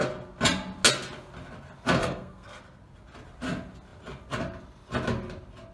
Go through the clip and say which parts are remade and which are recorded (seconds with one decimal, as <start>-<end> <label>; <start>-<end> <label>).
0.0-2.0 recorded; 2.0-2.6 remade; 2.6-5.7 recorded